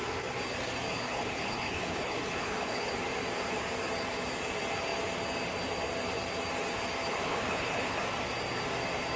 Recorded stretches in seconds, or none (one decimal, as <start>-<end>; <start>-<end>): 0.0-0.9; 2.9-7.1; 8.0-9.2